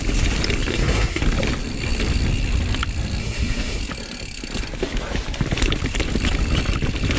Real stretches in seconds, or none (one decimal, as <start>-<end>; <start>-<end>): 0.0-0.7; 1.2-3.2; 3.8-7.2